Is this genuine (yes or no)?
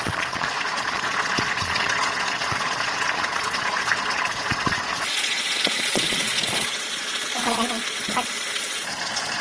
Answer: no